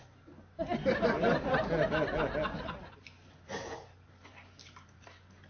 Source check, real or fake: real